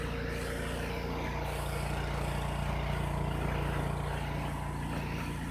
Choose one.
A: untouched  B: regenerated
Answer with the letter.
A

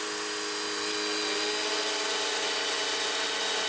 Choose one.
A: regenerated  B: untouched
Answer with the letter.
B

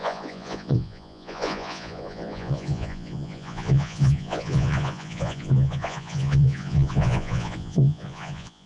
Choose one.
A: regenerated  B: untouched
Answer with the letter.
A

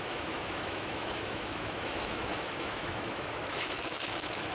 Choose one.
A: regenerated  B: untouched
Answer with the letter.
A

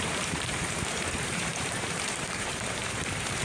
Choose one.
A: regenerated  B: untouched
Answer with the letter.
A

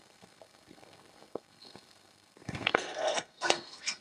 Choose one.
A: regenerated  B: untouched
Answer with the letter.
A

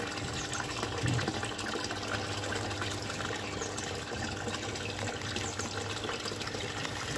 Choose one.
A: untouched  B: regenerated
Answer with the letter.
A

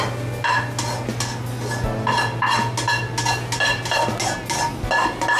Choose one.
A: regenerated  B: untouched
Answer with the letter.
B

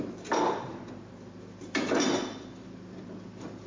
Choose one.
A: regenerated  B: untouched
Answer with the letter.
A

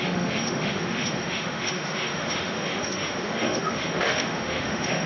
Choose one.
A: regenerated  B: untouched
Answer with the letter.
A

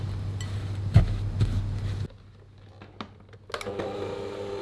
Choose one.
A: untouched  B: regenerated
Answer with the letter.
A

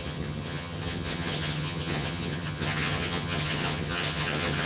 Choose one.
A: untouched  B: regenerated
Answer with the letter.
B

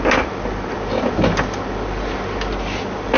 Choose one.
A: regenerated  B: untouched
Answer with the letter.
B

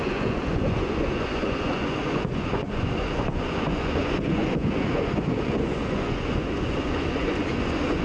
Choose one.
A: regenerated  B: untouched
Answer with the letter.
A